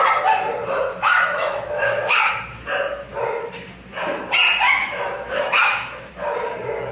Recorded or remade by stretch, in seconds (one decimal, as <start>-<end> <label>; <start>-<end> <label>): 0.0-0.9 recorded; 0.9-2.3 remade; 2.3-4.8 recorded; 4.8-6.1 remade; 6.1-6.9 recorded